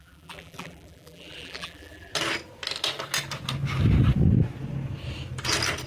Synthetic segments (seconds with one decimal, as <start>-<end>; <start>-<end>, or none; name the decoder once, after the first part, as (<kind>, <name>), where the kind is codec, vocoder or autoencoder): 0.0-2.1 (vocoder, BigVGAN v2)